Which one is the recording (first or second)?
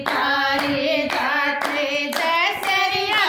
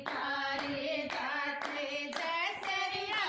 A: first